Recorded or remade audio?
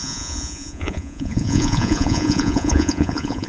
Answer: remade